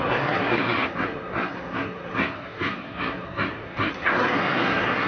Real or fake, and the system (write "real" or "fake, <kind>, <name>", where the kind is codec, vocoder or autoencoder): fake, codec, SNAC